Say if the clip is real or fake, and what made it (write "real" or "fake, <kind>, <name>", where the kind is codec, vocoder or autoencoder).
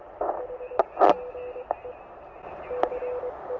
real